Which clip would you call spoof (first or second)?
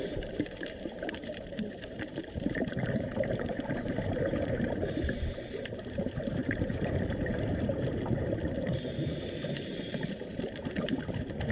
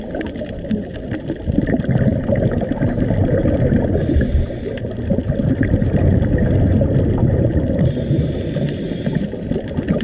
first